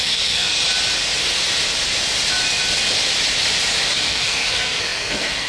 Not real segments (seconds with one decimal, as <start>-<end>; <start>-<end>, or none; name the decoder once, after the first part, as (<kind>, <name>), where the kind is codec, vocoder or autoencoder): 0.0-0.6 (codec, SNAC); 3.9-5.5